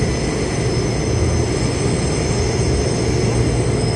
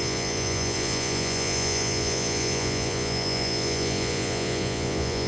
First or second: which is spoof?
second